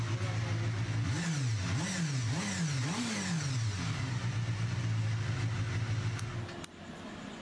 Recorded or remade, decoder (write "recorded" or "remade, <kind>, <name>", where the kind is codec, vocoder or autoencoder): recorded